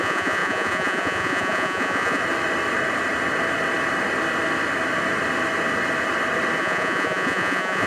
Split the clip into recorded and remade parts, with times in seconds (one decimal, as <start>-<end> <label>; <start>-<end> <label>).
0.0-2.2 remade; 2.2-6.6 recorded; 6.6-7.9 remade